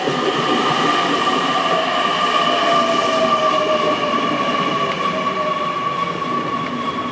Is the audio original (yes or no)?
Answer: no